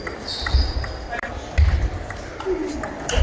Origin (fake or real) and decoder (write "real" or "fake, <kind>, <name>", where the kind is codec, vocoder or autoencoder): fake, vocoder, BigVGAN v2